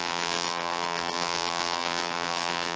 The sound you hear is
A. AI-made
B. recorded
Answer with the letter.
A